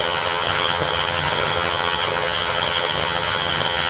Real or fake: fake